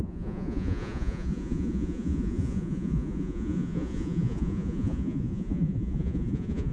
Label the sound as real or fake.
fake